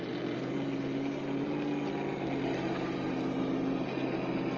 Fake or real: real